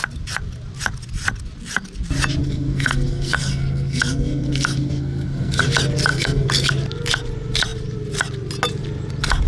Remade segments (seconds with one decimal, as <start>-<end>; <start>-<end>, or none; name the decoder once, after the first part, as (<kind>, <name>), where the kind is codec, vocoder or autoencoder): 2.4-5.6 (codec, SNAC); 6.1-6.7